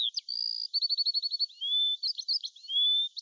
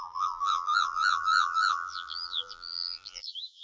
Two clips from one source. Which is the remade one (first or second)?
second